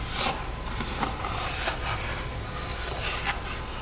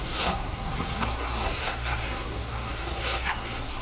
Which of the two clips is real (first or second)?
first